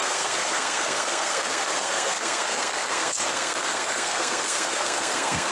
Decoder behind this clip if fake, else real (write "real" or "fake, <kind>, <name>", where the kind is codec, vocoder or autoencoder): fake, codec, SNAC